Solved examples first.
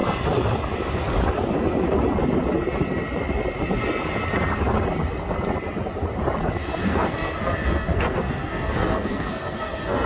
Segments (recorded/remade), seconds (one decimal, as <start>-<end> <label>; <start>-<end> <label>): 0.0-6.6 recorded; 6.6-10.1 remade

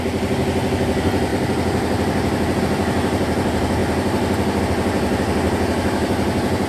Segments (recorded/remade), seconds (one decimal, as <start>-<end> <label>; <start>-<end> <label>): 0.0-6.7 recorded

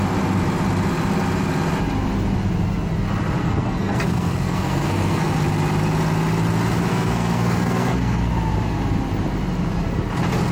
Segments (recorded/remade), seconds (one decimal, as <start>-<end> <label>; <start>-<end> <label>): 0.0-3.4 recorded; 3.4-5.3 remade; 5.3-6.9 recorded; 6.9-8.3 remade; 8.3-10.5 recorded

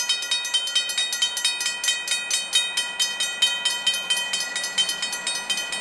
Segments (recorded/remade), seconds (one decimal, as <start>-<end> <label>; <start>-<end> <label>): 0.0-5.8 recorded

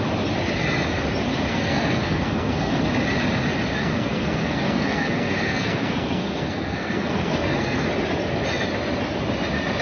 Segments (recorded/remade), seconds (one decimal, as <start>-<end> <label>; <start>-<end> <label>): 0.0-1.5 recorded; 1.5-2.8 remade; 2.8-3.8 recorded; 3.8-7.9 remade; 7.9-9.8 recorded

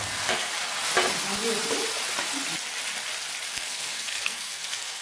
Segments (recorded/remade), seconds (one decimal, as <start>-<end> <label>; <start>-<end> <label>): 0.0-0.5 remade; 0.5-3.5 recorded; 3.5-5.0 remade

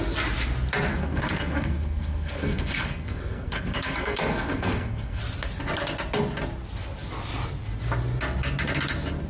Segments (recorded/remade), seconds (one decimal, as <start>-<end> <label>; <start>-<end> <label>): 0.0-0.9 recorded; 0.9-5.2 remade; 5.2-9.3 recorded

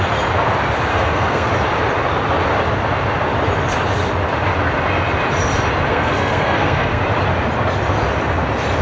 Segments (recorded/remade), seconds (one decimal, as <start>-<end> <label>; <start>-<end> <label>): 0.0-0.9 recorded; 0.9-1.5 remade; 1.5-5.9 recorded; 5.9-7.0 remade; 7.0-8.8 recorded